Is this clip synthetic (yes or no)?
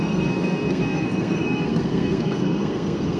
yes